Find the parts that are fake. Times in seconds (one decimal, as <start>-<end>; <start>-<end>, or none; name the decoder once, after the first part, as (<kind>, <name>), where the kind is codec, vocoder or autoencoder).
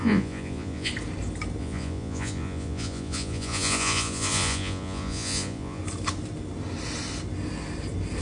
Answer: 0.0-0.9 (vocoder, Vocos); 1.6-5.8